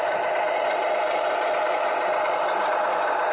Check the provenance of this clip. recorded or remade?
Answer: recorded